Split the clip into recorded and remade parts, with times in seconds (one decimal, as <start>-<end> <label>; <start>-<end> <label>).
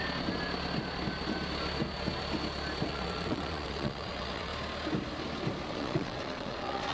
0.0-2.9 recorded; 2.9-4.5 remade; 4.5-5.7 recorded; 5.7-6.9 remade